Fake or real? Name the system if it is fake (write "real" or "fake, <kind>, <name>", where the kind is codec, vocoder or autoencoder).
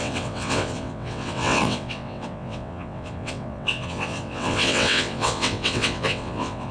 fake, vocoder, WaveNeXt